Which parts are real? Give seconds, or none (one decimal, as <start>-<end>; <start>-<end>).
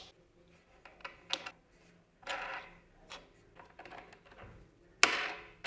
0.0-5.7